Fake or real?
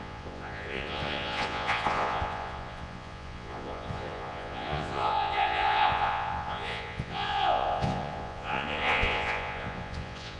fake